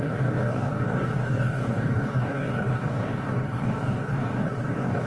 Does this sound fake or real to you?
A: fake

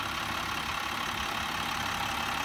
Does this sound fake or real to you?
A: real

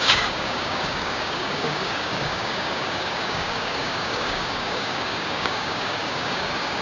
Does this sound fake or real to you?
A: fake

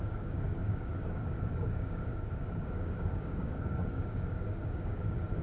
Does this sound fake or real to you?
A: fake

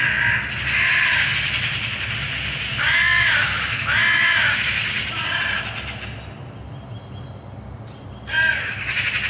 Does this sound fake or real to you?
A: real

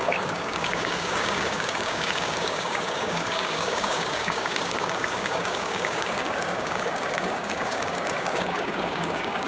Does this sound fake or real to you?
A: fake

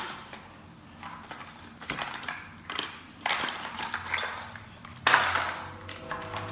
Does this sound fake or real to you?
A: real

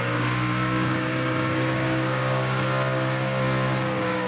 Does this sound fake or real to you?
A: fake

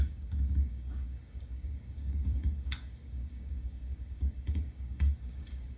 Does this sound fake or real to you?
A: fake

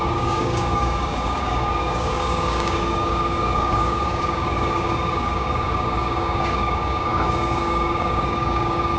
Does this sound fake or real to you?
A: fake